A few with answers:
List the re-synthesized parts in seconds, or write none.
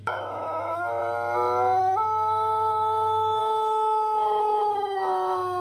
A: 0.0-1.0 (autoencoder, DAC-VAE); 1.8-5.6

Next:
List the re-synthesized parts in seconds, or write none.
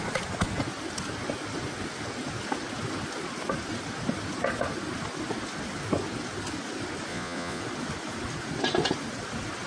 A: 7.1-7.6 (vocoder, Vocos)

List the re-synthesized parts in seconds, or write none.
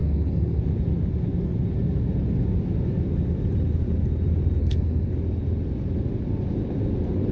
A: 0.0-0.6 (codec, SNAC); 4.6-5.1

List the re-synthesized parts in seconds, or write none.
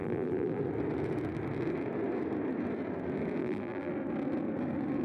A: 0.0-0.6 (vocoder, BigVGAN v2); 3.4-3.9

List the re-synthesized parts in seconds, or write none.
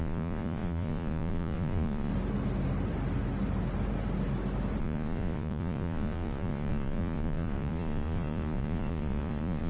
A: 0.0-2.1 (vocoder, Vocos); 4.8-9.7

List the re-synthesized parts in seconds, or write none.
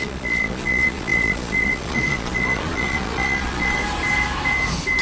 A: 0.0-3.8 (vocoder, Vocos)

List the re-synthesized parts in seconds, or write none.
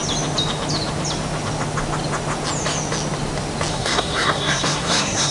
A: 3.7-5.3 (codec, SNAC)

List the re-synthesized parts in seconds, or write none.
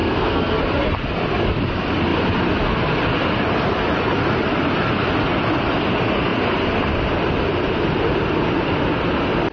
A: 0.0-0.6 (codec, SNAC)